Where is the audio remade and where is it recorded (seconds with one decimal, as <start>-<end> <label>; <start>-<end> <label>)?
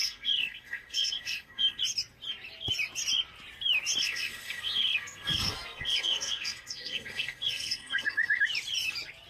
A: 0.0-1.8 remade; 1.8-4.0 recorded; 4.0-8.4 remade; 8.4-9.3 recorded